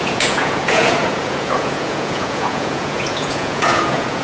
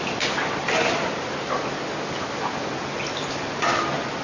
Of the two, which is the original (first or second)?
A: second